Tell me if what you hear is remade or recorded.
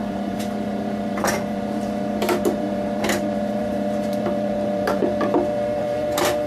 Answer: remade